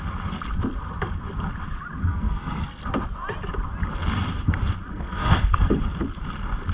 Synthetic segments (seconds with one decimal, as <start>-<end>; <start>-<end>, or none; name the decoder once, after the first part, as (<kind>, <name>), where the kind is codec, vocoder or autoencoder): 2.0-2.8 (codec, SNAC); 4.9-5.8